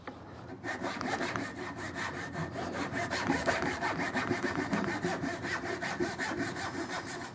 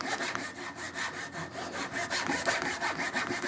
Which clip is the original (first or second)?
second